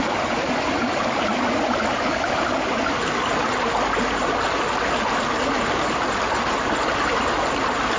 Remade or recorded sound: recorded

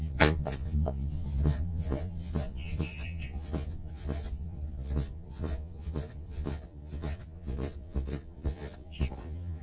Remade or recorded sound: remade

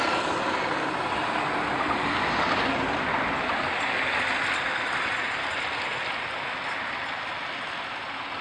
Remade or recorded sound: recorded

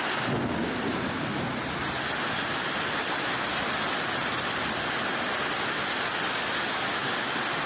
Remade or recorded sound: recorded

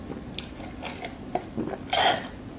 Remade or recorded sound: recorded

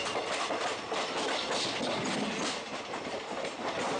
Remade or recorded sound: recorded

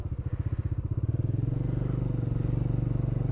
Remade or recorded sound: recorded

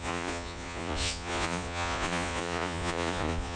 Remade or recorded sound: remade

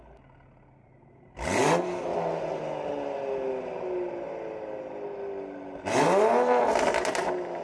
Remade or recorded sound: recorded